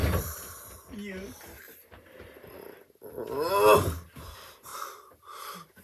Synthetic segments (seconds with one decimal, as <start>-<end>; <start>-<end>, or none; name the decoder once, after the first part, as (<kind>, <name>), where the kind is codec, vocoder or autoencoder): none